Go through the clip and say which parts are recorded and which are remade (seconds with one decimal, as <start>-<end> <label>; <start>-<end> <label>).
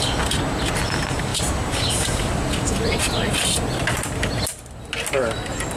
0.0-5.8 recorded